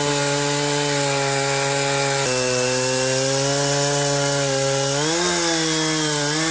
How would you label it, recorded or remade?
recorded